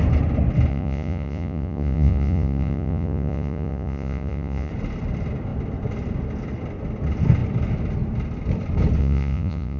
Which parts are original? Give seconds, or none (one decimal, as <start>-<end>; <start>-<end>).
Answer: 0.0-0.7; 4.7-9.0